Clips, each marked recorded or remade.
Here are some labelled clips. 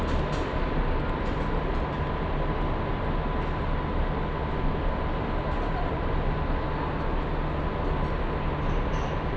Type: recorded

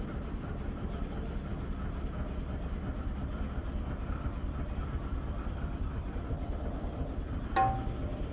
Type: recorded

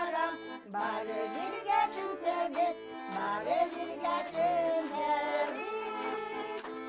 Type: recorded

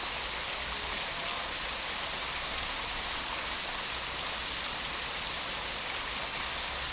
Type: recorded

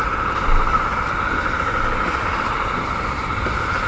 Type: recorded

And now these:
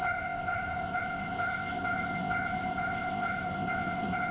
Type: remade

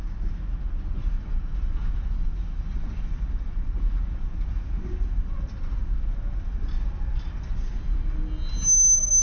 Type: recorded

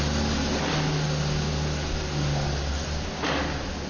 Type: recorded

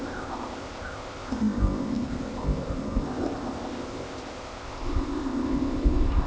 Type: remade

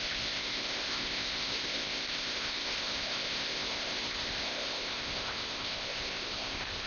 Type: remade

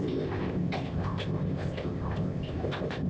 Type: remade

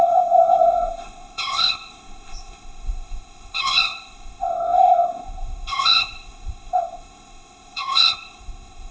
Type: remade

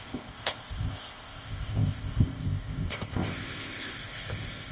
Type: remade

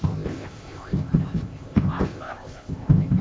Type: remade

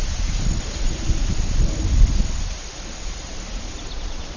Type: recorded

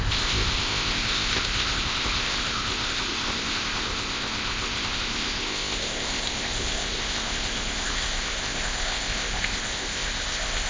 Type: remade